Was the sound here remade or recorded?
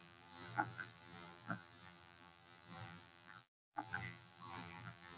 remade